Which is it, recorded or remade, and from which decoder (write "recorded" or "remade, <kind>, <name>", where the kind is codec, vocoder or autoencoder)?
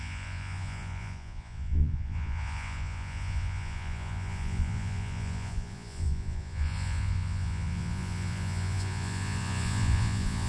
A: remade, vocoder, Vocos